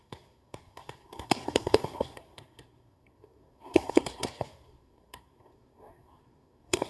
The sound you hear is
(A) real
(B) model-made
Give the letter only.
B